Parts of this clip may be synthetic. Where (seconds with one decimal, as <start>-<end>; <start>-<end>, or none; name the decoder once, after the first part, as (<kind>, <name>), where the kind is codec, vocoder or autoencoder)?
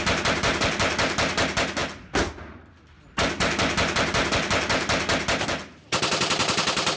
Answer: none